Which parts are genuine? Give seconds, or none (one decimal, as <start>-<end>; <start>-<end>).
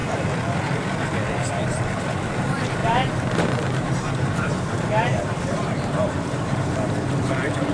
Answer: 0.0-2.8; 7.1-7.7